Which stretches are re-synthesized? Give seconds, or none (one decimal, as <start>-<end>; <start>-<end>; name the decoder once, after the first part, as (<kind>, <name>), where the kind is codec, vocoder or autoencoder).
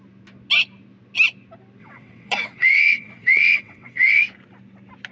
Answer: 1.8-4.2 (vocoder, WaveNeXt)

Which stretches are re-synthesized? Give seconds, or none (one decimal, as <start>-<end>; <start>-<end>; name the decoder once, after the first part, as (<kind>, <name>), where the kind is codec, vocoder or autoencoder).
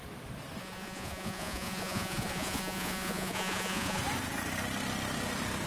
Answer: 0.6-4.0 (vocoder, Vocos)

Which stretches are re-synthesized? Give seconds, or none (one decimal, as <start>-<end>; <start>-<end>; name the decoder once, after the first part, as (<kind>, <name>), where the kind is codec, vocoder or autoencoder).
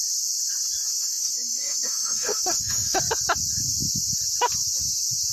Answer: 0.9-3.0 (autoencoder, DAC-VAE)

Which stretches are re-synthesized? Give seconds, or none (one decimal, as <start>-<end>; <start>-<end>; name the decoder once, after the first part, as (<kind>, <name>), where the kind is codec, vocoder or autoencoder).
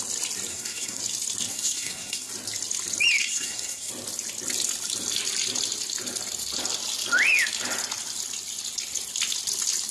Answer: 0.5-1.0 (codec, SNAC); 1.5-2.3; 3.2-3.9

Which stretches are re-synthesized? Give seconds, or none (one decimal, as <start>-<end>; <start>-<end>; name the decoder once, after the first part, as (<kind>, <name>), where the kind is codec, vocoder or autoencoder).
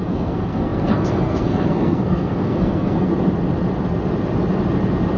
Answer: 0.0-3.1 (codec, SNAC)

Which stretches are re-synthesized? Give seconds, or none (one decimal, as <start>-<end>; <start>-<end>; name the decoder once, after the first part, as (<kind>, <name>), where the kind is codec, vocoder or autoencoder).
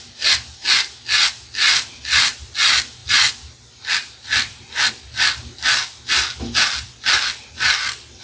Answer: none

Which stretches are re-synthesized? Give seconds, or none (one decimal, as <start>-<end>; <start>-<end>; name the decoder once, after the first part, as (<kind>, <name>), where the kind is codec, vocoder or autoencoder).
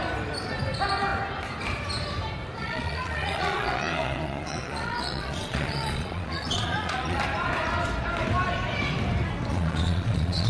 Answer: 2.6-7.2 (vocoder, Vocos); 9.5-10.5